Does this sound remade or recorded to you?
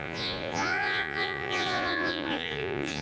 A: remade